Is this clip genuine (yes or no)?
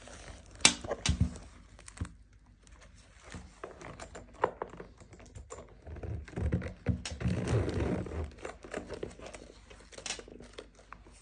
yes